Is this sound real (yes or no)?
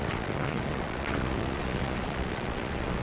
no